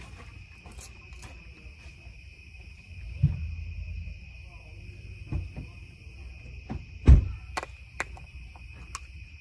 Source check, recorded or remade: recorded